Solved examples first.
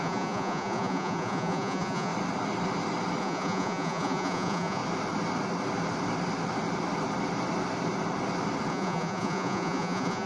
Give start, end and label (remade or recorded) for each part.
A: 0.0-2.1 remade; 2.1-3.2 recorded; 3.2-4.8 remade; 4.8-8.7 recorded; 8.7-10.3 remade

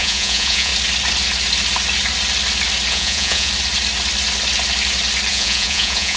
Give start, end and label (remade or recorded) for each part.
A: 0.0-0.7 remade; 0.7-2.9 recorded; 2.9-3.5 remade; 3.5-5.3 recorded; 5.3-6.2 remade

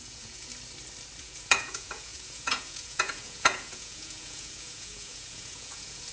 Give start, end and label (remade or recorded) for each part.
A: 0.0-0.5 remade; 0.5-1.2 recorded; 1.2-6.1 remade

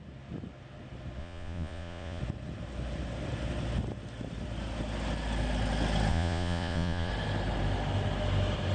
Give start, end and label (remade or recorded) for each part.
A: 0.0-1.2 recorded; 1.2-2.2 remade; 2.2-6.1 recorded; 6.1-7.1 remade; 7.1-8.7 recorded

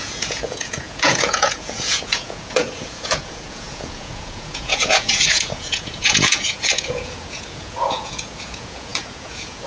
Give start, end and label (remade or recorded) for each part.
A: 0.0-9.7 remade

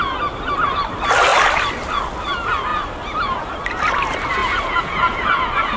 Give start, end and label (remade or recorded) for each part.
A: 0.0-4.4 recorded; 4.4-5.8 remade

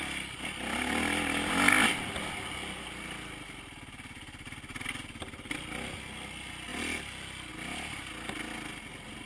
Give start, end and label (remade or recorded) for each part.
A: 0.0-9.3 recorded

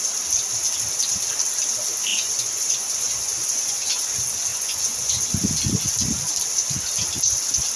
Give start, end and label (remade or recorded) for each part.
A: 0.0-2.1 recorded; 2.1-4.1 remade; 4.1-4.5 recorded; 4.5-5.2 remade; 5.2-7.8 recorded